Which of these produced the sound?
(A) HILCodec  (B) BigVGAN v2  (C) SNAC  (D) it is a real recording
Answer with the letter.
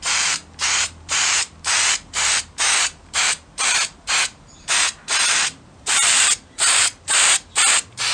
B